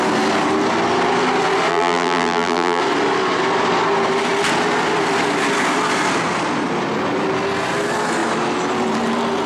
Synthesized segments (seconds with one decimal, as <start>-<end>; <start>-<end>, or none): 1.7-2.8